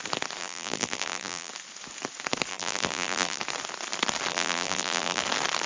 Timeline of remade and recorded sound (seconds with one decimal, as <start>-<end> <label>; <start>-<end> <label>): 0.0-0.4 recorded; 0.4-1.5 remade; 1.5-2.5 recorded; 2.5-3.4 remade; 3.4-4.3 recorded; 4.3-5.2 remade; 5.2-5.7 recorded